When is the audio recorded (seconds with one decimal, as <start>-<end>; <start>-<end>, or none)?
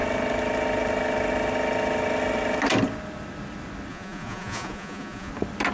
0.0-3.9; 5.3-5.7